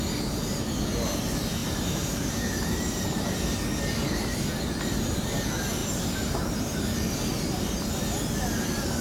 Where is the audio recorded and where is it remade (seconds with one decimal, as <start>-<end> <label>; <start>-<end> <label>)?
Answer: 0.0-1.6 recorded; 1.6-3.4 remade; 3.4-5.8 recorded; 5.8-6.8 remade; 6.8-9.0 recorded